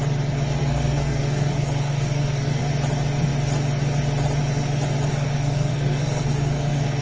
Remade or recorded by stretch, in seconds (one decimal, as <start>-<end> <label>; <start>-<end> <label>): 0.0-0.6 recorded; 0.6-2.6 remade; 2.6-5.1 recorded; 5.1-7.0 remade